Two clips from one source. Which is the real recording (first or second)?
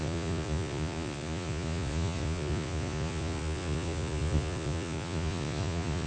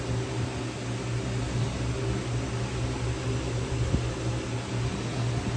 second